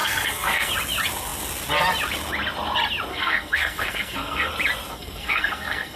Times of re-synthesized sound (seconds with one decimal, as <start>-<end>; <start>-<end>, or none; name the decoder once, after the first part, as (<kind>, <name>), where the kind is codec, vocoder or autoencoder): 0.0-0.7 (codec, SNAC); 3.1-4.5; 4.9-6.0